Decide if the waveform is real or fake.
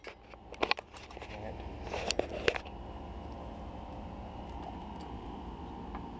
real